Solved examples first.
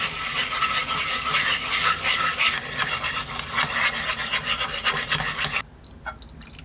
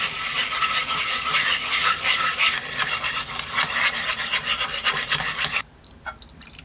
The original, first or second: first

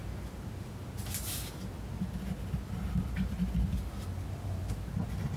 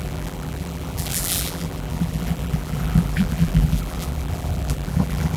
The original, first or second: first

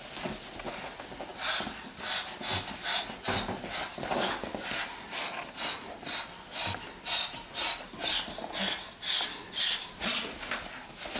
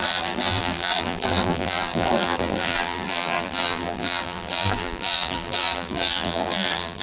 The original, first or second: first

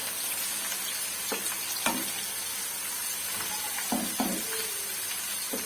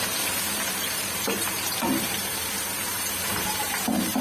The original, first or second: first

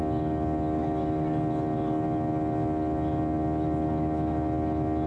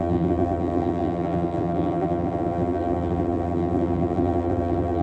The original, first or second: first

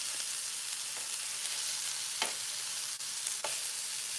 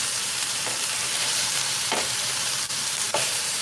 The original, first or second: first